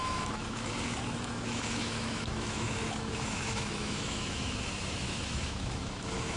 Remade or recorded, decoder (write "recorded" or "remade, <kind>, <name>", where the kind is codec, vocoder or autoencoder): remade, autoencoder, DAC-VAE